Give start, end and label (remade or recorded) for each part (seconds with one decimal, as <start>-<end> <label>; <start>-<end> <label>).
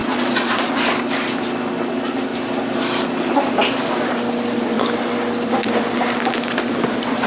0.0-0.7 remade; 0.7-7.3 recorded